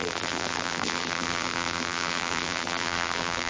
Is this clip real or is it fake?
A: fake